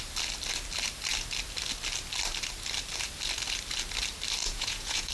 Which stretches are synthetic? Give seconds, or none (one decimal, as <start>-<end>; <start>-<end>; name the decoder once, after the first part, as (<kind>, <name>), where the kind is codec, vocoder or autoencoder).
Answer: 4.4-5.1 (vocoder, Vocos)